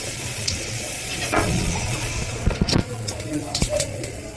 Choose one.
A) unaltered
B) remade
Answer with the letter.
B